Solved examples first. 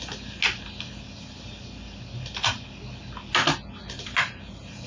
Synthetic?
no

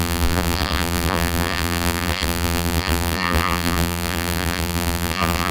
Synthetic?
yes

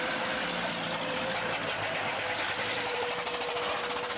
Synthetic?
yes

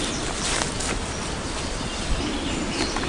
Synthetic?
no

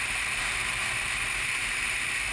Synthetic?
yes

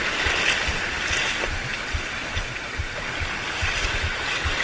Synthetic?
no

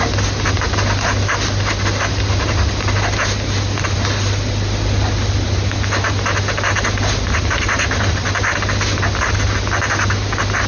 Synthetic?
no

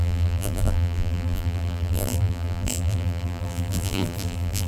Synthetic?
yes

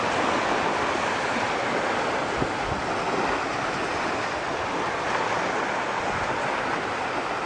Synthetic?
no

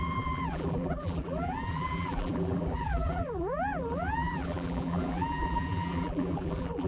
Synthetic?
yes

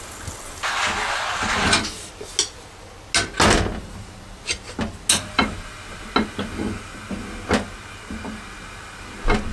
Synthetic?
no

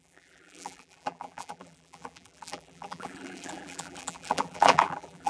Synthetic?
yes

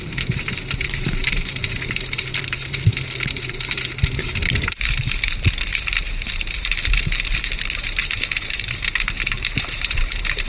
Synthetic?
yes